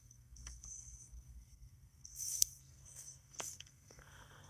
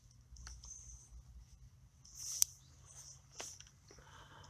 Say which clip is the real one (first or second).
second